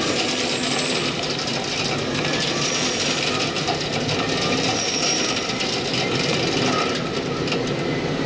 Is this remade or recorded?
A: recorded